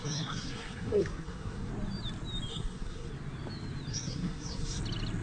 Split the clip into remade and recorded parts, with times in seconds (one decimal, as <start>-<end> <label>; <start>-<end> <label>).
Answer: 0.0-1.7 remade; 1.7-2.5 recorded; 2.5-3.1 remade; 3.1-3.9 recorded; 3.9-4.8 remade; 4.8-5.2 recorded